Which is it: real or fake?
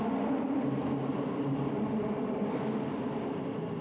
real